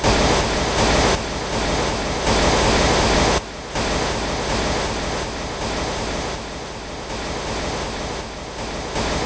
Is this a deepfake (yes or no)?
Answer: no